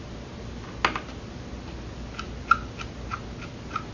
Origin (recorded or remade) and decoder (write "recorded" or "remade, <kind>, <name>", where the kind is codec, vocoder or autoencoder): recorded